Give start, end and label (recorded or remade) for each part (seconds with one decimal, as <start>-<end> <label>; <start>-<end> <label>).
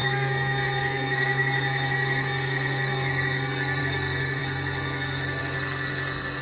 0.0-6.4 remade